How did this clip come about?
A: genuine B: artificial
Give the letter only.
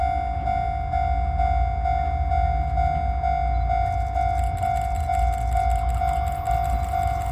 A